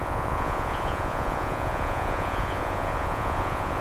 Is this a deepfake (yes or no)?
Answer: yes